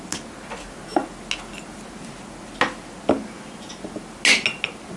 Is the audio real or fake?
real